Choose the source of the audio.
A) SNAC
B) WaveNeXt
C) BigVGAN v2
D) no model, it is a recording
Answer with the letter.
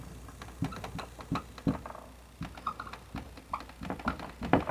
D